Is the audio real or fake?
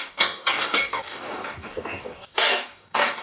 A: fake